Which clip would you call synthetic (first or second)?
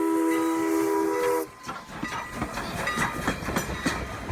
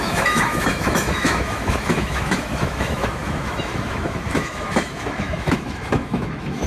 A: second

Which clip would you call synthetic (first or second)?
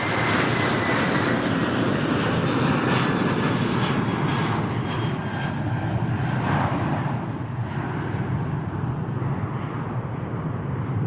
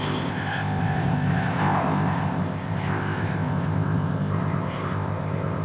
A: second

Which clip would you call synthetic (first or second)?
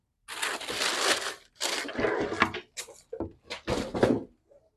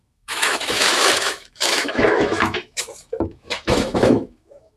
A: second